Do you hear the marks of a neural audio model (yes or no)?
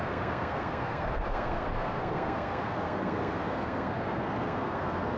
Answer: yes